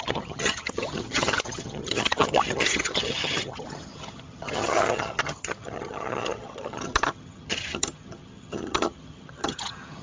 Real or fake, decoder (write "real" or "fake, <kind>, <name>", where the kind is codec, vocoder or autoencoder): fake, vocoder, HiFi-GAN